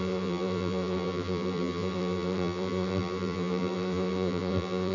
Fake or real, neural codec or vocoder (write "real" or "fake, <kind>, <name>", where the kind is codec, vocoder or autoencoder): fake, vocoder, BigVGAN v2